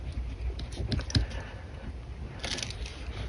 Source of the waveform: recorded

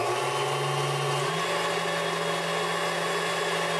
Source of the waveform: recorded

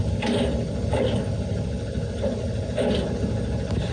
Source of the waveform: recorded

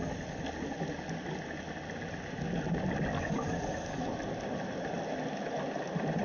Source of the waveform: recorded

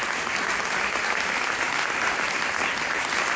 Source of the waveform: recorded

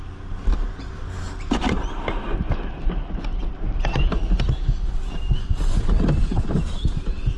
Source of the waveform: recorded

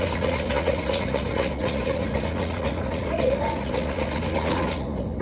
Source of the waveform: remade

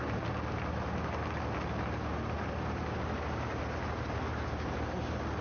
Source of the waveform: recorded